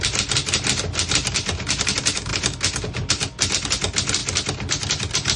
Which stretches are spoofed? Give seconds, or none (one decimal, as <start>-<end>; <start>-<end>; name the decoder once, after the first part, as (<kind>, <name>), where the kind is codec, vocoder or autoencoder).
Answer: none